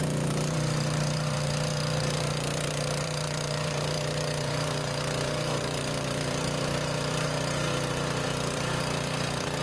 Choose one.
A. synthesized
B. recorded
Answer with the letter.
A